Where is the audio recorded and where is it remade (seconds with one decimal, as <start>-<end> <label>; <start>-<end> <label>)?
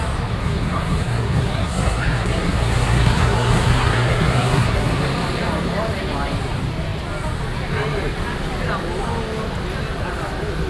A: 0.0-0.4 recorded; 0.4-5.0 remade; 5.0-10.7 recorded